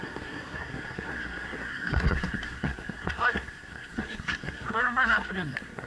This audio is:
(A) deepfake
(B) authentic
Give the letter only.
A